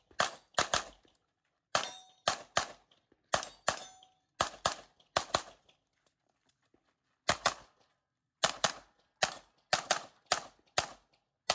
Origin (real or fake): real